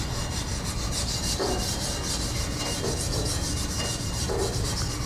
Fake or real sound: real